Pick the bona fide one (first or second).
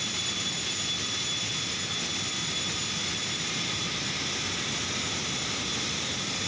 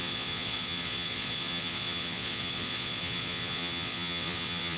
first